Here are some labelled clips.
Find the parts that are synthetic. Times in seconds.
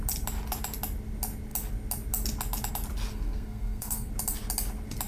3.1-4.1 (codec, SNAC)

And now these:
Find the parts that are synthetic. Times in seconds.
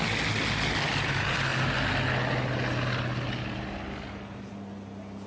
none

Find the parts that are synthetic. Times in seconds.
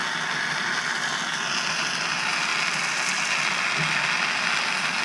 none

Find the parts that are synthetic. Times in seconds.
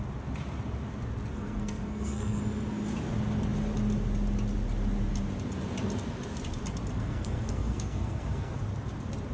1.3-2.4 (codec, SNAC); 6.9-8.6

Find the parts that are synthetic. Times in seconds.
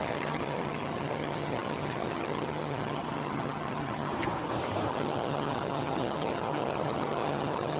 0.0-4.1 (vocoder, HiFi-GAN); 4.9-7.8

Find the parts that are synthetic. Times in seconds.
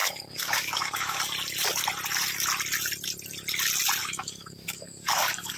0.0-1.2 (codec, DAC); 4.0-5.6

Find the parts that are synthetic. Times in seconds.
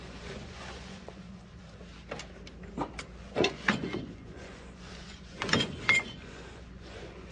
0.0-1.8 (vocoder, Vocos); 3.2-7.3